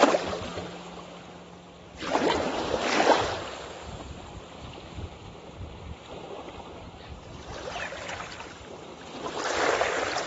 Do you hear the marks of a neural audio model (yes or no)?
no